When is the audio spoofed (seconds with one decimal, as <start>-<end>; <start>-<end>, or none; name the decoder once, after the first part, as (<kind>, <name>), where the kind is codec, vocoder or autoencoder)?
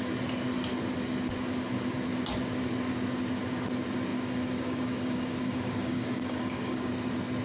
4.1-6.9 (codec, DAC)